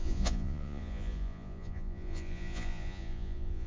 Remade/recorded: remade